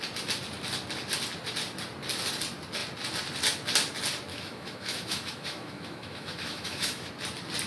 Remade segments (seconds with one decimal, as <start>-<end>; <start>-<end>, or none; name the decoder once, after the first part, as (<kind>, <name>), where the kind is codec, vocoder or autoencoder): 4.3-7.1 (autoencoder, DAC-VAE)

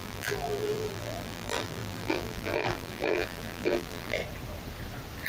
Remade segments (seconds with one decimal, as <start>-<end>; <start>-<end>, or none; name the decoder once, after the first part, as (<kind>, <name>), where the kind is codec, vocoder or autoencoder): 0.0-4.2 (vocoder, BigVGAN v2)

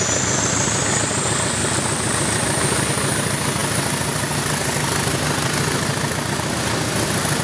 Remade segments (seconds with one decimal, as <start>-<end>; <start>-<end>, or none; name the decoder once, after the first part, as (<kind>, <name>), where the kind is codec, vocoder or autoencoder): 1.6-2.8 (vocoder, BigVGAN v2)

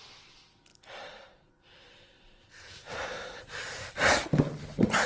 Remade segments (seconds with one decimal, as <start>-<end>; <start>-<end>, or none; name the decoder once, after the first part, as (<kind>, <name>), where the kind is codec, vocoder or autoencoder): 0.7-3.8 (vocoder, BigVGAN v2)

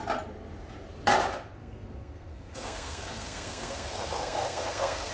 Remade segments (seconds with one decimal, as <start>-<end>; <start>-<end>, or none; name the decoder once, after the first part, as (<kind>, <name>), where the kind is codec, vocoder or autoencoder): 1.6-5.1 (codec, SNAC)

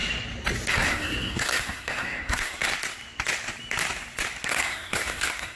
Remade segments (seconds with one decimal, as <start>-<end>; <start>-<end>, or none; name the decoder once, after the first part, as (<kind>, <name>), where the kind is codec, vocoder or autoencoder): 0.7-2.7 (codec, SNAC); 4.5-5.6

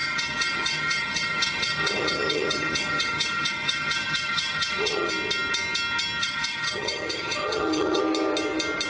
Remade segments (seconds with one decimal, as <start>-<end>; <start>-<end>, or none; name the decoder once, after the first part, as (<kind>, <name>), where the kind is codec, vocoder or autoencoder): 0.0-5.1 (vocoder, HiFi-GAN); 6.2-8.0

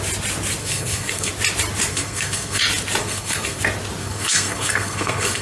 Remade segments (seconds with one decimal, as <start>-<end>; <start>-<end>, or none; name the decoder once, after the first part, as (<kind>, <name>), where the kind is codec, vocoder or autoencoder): 0.6-1.3 (codec, SNAC); 1.9-2.6; 3.0-3.6; 4.0-5.4